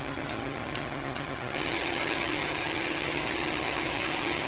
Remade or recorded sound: remade